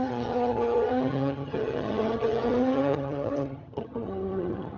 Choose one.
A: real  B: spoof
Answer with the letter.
B